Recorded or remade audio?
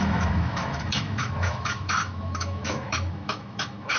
remade